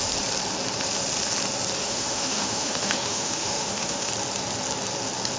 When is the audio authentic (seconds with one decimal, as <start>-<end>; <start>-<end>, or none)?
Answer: 0.0-1.8; 4.1-5.4